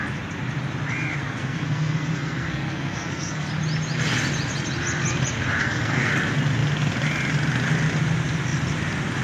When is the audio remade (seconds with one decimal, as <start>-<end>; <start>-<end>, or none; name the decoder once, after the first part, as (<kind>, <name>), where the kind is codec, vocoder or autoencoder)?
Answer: 1.2-3.5 (codec, SNAC); 5.6-6.1